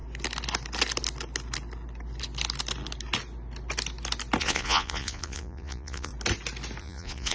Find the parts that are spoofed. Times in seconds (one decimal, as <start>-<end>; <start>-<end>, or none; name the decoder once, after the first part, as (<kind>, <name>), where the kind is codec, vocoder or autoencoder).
4.4-6.1 (vocoder, Vocos); 6.8-7.3